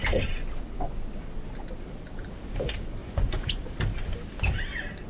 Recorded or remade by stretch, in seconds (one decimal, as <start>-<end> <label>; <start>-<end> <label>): 0.0-3.0 recorded; 3.0-3.6 remade; 3.6-5.1 recorded

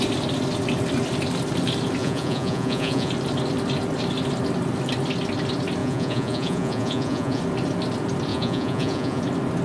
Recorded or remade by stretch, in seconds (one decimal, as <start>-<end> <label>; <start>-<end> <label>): 0.0-2.0 recorded; 2.0-3.1 remade; 3.1-5.8 recorded; 5.8-7.4 remade; 7.4-8.3 recorded; 8.3-9.2 remade; 9.2-9.6 recorded

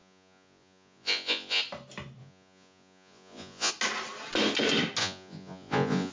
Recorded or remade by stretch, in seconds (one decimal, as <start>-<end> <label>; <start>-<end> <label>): 0.0-1.6 remade; 1.6-2.2 recorded; 2.2-3.7 remade; 3.7-5.0 recorded; 5.0-6.1 remade

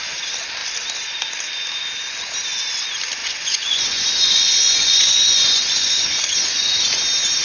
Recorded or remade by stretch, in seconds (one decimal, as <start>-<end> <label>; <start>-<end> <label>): 0.0-3.2 recorded; 3.2-6.7 remade; 6.7-7.4 recorded

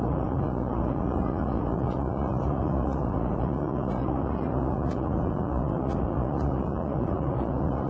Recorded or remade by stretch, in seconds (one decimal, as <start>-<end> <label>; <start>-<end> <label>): 0.0-7.9 remade

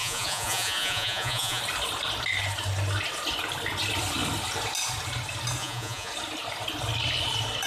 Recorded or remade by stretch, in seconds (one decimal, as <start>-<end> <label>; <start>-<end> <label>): 0.0-1.6 remade; 1.6-5.6 recorded; 5.6-6.1 remade; 6.1-7.7 recorded

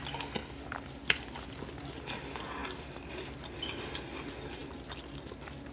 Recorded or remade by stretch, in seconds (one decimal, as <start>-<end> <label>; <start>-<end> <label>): 0.0-5.7 recorded